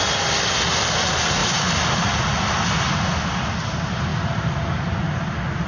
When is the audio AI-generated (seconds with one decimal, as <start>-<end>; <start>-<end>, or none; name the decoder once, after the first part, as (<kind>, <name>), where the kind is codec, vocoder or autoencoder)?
1.4-2.0 (vocoder, BigVGAN v2)

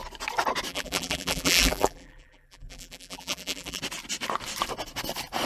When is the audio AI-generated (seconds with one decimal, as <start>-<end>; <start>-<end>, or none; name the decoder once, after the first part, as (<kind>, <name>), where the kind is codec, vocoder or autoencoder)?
0.7-3.8 (vocoder, BigVGAN v2)

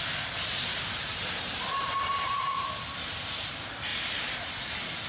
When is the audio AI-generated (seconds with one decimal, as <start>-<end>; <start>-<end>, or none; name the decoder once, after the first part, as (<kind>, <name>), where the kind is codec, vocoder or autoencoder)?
0.7-2.7 (vocoder, BigVGAN v2)